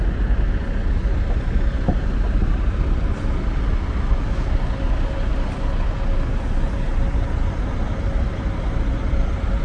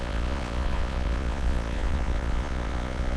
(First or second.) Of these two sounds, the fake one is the second